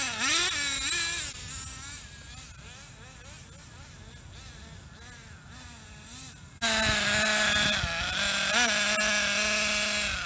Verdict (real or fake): real